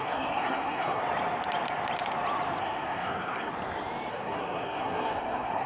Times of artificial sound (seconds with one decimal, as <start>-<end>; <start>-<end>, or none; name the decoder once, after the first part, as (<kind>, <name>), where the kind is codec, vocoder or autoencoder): 0.0-1.0 (codec, SNAC); 2.6-3.5; 4.1-5.7